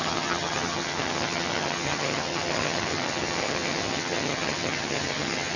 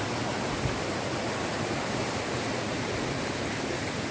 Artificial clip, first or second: first